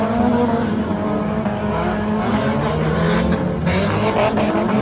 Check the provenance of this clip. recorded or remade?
recorded